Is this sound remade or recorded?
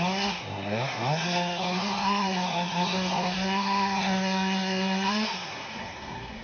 remade